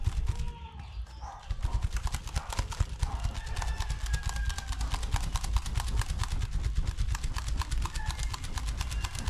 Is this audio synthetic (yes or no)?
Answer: no